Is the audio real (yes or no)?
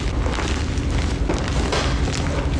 yes